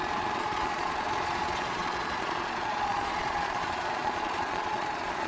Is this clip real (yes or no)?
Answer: no